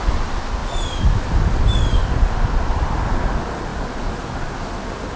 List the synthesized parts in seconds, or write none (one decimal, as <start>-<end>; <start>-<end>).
none